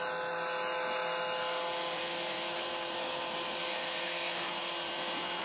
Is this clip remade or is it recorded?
recorded